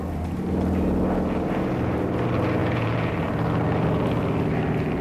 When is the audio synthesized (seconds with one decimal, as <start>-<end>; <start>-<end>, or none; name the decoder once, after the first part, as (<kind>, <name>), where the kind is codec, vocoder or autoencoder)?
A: 2.6-3.1 (vocoder, Vocos)

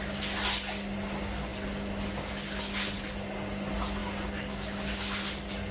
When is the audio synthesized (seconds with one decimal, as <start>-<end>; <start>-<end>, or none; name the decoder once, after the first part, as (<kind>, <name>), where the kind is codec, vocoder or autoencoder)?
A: none

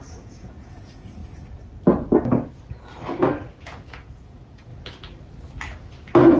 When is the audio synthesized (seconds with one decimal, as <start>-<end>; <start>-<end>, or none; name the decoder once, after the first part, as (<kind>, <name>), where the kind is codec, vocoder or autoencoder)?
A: 0.0-1.2 (vocoder, Vocos); 3.6-4.7

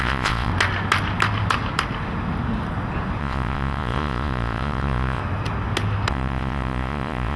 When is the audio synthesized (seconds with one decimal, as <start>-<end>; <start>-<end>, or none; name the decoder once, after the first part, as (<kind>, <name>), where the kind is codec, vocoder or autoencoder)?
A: 0.0-0.5 (vocoder, Vocos); 3.2-5.2; 6.1-7.4

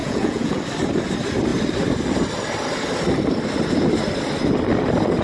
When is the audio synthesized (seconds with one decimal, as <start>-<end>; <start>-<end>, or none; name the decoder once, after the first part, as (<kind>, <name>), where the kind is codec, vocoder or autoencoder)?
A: 0.0-0.6 (vocoder, Vocos)

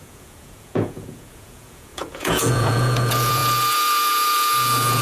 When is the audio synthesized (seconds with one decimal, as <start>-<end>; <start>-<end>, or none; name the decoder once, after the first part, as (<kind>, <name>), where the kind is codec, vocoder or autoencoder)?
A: 0.0-5.0 (vocoder, Vocos)

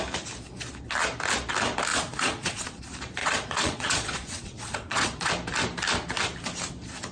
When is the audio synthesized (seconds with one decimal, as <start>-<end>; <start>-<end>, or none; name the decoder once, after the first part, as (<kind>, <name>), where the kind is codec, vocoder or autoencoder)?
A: 1.9-2.8 (vocoder, Vocos); 3.2-5.3